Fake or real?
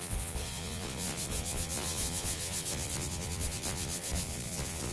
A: fake